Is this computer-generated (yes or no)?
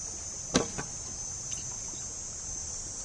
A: no